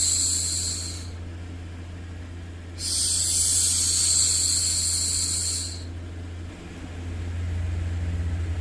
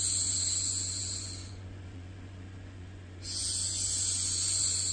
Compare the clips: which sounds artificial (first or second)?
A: second